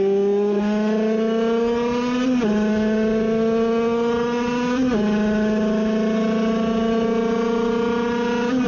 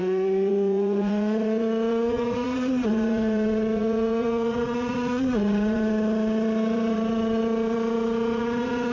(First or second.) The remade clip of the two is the second